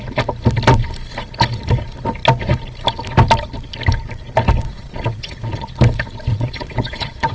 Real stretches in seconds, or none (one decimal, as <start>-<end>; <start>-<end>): 0.0-4.6; 5.7-6.3